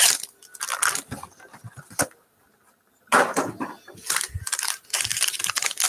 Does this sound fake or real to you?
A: real